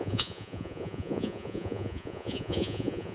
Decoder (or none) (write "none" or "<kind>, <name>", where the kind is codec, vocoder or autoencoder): vocoder, Vocos